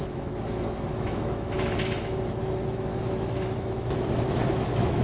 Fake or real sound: fake